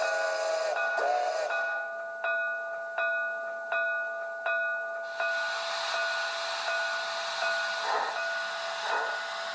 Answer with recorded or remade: recorded